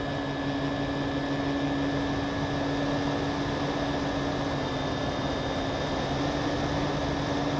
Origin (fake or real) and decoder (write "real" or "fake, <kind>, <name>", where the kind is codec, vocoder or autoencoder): real